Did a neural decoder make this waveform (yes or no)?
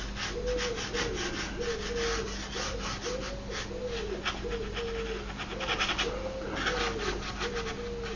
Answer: no